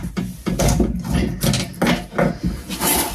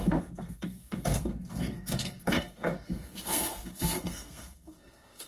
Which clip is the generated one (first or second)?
second